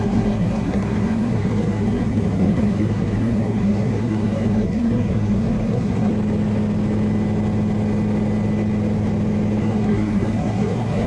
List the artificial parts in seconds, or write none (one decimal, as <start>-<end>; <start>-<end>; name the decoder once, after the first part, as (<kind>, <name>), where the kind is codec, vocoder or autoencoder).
0.0-6.1 (codec, SNAC); 9.6-11.1